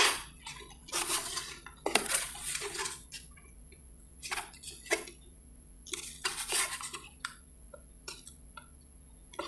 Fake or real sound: fake